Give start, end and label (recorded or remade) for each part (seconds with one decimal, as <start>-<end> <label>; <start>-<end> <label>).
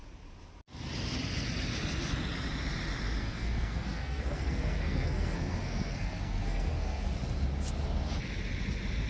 0.0-3.2 recorded; 3.2-7.1 remade; 7.1-9.1 recorded